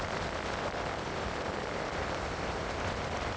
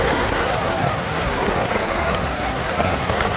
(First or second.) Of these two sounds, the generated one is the second